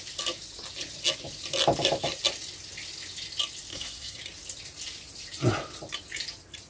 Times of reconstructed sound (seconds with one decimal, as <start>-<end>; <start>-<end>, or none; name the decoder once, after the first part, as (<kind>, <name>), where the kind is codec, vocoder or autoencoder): 3.7-4.2 (codec, SNAC)